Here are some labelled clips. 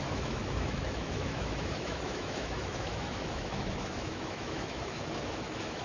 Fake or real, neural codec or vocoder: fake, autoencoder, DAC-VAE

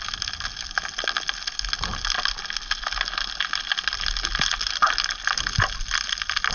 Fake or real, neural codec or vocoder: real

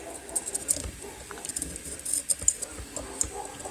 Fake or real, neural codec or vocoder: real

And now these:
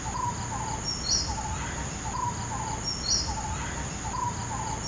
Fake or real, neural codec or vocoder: real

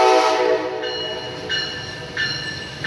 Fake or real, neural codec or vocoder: real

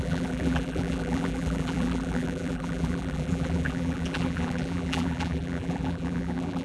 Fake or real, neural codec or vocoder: fake, vocoder, BigVGAN v2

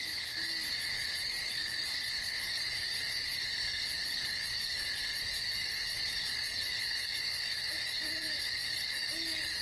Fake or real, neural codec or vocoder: fake, codec, DAC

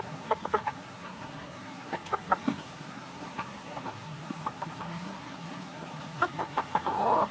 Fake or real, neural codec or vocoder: fake, codec, SNAC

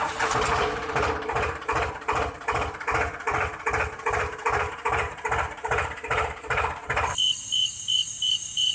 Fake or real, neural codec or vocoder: fake, vocoder, BigVGAN v2